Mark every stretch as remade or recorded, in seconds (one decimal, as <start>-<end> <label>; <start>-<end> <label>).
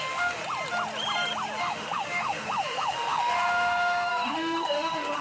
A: 0.0-0.4 remade; 0.4-1.6 recorded; 1.6-5.2 remade